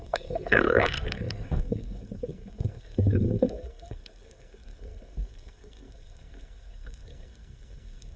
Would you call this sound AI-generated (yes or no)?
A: yes